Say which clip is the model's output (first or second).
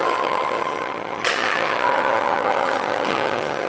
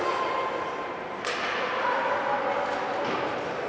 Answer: first